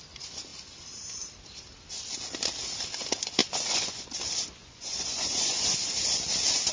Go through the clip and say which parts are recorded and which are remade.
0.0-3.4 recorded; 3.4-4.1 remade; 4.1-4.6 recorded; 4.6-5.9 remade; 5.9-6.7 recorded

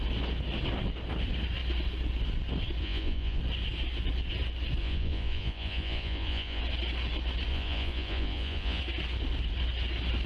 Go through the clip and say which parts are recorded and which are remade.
0.0-2.8 recorded; 2.8-3.4 remade; 3.4-4.8 recorded; 4.8-6.6 remade; 6.6-7.5 recorded; 7.5-8.8 remade; 8.8-10.3 recorded

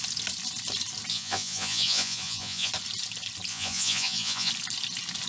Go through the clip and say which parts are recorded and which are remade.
0.0-1.1 recorded; 1.1-2.7 remade; 2.7-3.5 recorded; 3.5-4.5 remade; 4.5-5.3 recorded

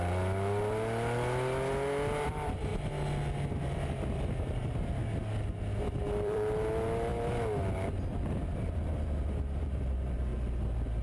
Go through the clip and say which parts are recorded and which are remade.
0.0-2.7 remade; 2.7-3.6 recorded; 3.6-5.0 remade; 5.0-5.8 recorded; 5.8-7.1 remade; 7.1-8.6 recorded; 8.6-10.3 remade; 10.3-11.0 recorded

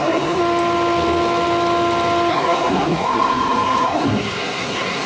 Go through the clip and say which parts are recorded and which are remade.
0.0-0.4 remade; 0.4-2.3 recorded; 2.3-5.1 remade

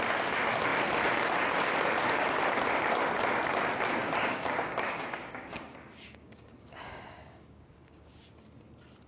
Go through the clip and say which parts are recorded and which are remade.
0.0-4.0 recorded; 4.0-8.3 remade; 8.3-9.1 recorded

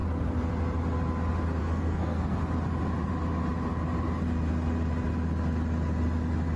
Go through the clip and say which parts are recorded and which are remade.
0.0-1.6 recorded; 1.6-2.4 remade; 2.4-6.6 recorded

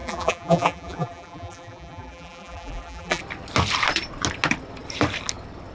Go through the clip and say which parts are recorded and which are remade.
0.0-3.2 remade; 3.2-5.7 recorded